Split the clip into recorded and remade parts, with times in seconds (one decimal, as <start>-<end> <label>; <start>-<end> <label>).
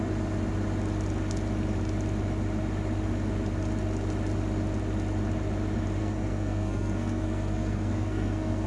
0.0-6.0 recorded; 6.0-8.7 remade